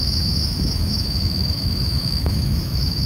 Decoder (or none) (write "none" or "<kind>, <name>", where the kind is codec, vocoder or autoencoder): autoencoder, DAC-VAE